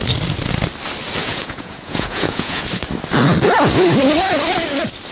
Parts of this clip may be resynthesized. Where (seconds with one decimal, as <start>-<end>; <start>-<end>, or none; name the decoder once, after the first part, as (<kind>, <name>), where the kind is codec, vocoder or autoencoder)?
1.2-2.6 (vocoder, Vocos)